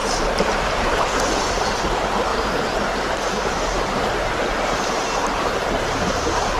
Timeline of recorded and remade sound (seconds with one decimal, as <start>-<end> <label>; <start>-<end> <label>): 0.0-1.0 remade; 1.0-2.3 recorded; 2.3-4.0 remade; 4.0-5.2 recorded; 5.2-6.6 remade